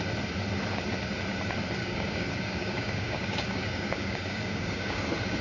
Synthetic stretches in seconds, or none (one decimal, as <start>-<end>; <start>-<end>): 1.8-5.0